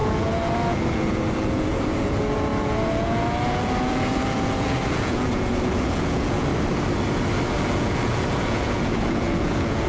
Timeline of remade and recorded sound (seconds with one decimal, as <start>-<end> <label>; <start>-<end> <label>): 0.0-6.5 remade; 6.5-7.5 recorded; 7.5-9.9 remade